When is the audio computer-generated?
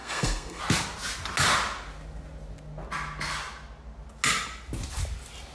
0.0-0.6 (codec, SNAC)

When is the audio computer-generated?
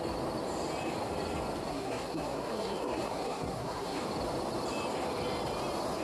1.7-4.0 (codec, SNAC)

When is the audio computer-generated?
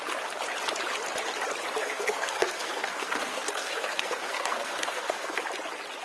1.8-5.4 (codec, SNAC)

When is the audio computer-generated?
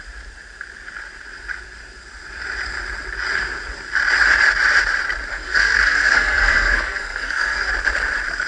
5.3-7.7 (codec, SNAC)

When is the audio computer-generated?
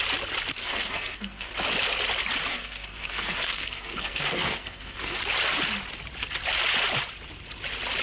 0.6-1.5 (codec, SNAC); 2.5-5.2